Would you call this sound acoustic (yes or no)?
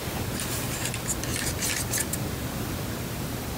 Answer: yes